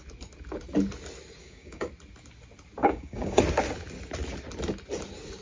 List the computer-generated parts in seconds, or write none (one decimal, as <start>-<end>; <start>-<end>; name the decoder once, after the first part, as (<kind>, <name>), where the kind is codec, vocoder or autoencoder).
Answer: 1.4-1.9 (codec, DAC); 2.8-3.4